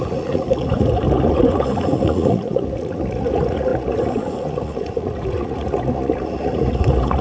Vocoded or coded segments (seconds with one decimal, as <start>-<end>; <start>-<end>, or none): 0.0-7.2